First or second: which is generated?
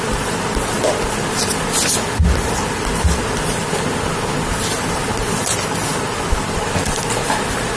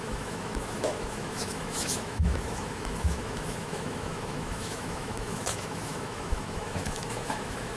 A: second